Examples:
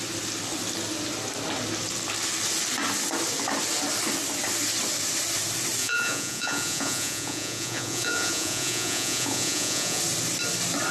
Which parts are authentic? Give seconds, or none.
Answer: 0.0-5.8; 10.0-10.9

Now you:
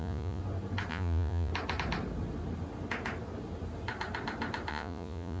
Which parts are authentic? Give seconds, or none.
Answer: 0.4-0.9; 1.5-4.7